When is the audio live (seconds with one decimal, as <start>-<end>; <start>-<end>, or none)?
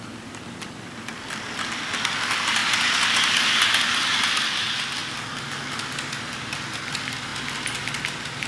0.0-8.5